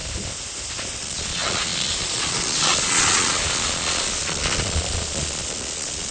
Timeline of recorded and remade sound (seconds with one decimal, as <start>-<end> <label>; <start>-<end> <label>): 0.0-1.0 recorded; 1.0-6.1 remade